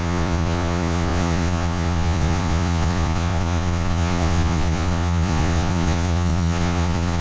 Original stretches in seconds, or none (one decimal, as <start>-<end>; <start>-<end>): none